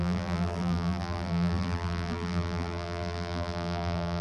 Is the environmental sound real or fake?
fake